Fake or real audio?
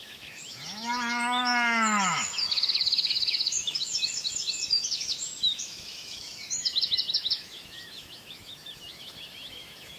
fake